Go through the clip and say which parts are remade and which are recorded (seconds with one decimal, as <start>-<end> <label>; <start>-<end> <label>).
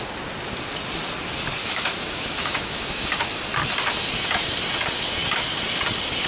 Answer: 0.0-1.6 recorded; 1.6-3.1 remade; 3.1-6.3 recorded